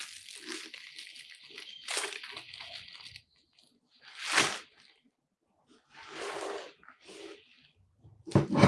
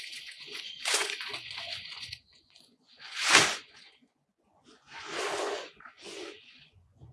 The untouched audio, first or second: first